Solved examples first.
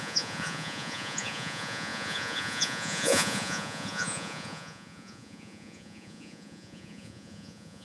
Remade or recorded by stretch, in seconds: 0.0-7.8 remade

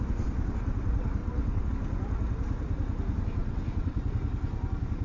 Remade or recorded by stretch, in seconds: 0.0-1.2 recorded; 1.2-1.7 remade; 1.7-3.4 recorded; 3.4-4.0 remade; 4.0-5.0 recorded

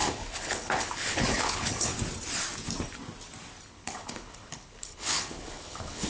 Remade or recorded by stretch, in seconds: 0.0-1.9 remade; 1.9-3.7 recorded; 3.7-6.1 remade

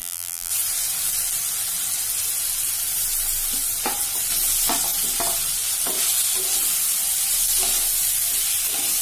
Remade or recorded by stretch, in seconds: 0.0-0.5 remade; 0.5-9.0 recorded

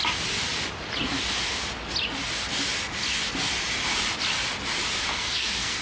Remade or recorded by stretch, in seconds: 0.0-5.1 recorded; 5.1-5.8 remade

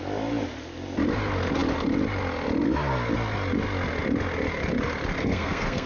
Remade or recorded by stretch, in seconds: 0.0-5.2 recorded; 5.2-5.9 remade

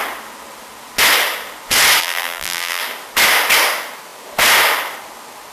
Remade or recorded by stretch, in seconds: 0.0-2.0 recorded; 2.0-2.8 remade; 2.8-5.5 recorded

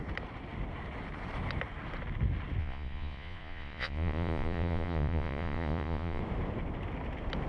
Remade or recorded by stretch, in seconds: 0.0-2.6 recorded; 2.6-6.2 remade; 6.2-7.5 recorded